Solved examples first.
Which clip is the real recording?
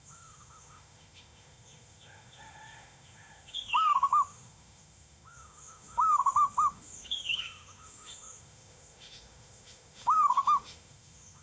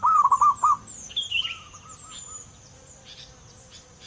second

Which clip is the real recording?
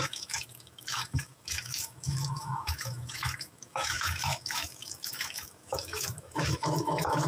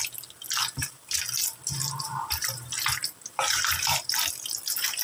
second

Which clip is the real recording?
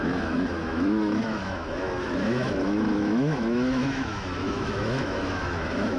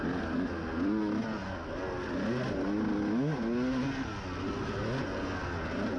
second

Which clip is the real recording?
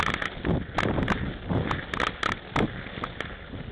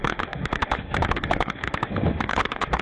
first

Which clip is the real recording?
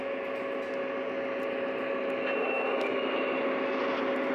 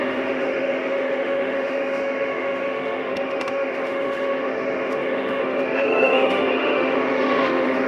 first